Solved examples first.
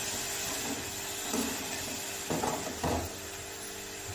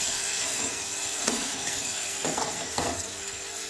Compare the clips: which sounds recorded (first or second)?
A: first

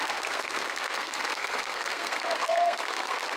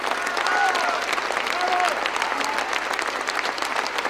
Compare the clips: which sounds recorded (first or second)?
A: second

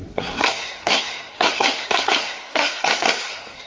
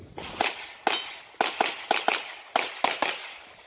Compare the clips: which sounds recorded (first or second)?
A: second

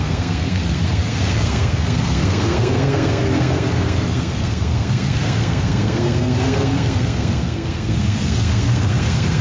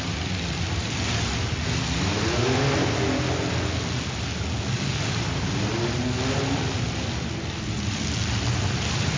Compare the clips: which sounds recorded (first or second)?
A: second